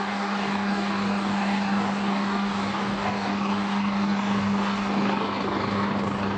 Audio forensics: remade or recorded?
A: remade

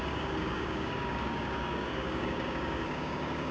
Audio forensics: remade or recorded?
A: remade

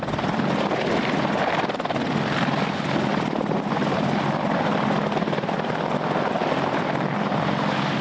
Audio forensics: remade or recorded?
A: recorded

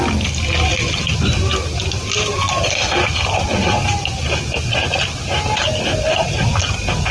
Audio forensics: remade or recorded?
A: recorded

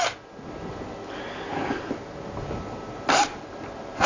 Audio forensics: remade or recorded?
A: recorded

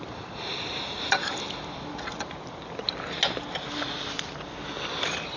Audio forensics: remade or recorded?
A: recorded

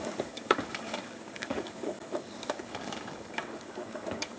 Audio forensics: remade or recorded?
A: remade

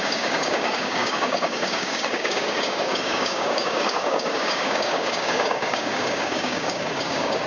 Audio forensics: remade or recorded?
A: remade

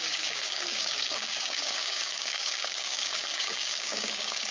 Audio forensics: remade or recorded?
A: remade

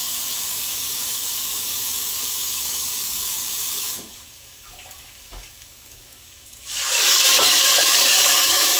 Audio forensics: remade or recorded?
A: remade